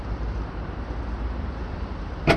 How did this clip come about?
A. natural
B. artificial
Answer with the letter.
B